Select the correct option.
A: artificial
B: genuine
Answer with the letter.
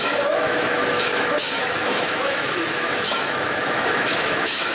A